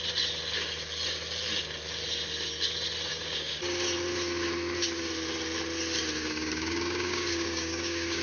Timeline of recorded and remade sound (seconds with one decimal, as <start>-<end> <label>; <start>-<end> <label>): 0.0-3.1 recorded; 3.1-3.6 remade; 3.6-6.2 recorded; 6.2-8.2 remade